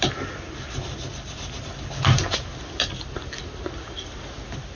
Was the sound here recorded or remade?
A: recorded